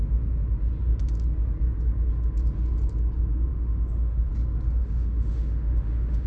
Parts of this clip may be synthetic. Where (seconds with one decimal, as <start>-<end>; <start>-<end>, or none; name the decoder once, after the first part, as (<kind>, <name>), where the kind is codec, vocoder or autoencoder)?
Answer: 3.5-4.3 (autoencoder, DAC-VAE); 4.8-6.3